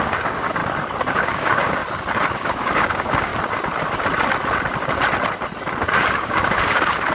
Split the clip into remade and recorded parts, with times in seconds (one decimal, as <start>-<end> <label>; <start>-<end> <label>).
0.0-0.6 remade; 0.6-1.1 recorded; 1.1-1.8 remade; 1.8-2.3 recorded; 2.3-3.3 remade; 3.3-5.8 recorded; 5.8-7.1 remade

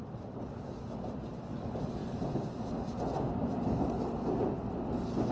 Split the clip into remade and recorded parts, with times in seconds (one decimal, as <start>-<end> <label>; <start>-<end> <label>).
0.0-5.3 recorded

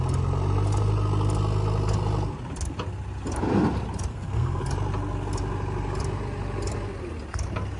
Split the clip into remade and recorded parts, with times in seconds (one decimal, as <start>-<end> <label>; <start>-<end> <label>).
0.0-4.1 recorded; 4.1-4.6 remade; 4.6-7.8 recorded

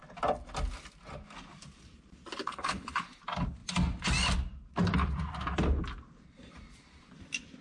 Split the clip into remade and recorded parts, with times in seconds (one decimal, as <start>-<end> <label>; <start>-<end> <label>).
0.0-2.4 recorded; 2.4-3.0 remade; 3.0-7.6 recorded

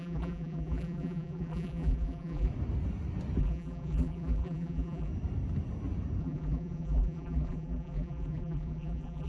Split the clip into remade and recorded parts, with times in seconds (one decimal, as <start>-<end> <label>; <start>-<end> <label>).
0.0-2.5 remade; 2.5-3.4 recorded; 3.4-5.1 remade; 5.1-6.2 recorded; 6.2-9.3 remade